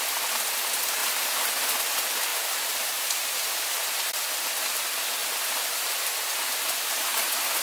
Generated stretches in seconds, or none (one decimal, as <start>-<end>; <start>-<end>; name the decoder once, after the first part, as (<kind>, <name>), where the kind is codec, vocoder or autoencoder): 1.0-1.5 (vocoder, BigVGAN v2); 2.3-4.0; 5.2-7.1